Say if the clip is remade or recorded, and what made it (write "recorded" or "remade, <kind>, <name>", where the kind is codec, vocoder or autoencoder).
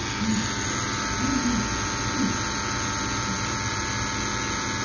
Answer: recorded